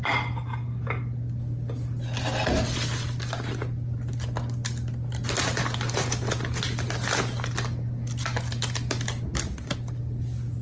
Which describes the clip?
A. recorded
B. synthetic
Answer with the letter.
A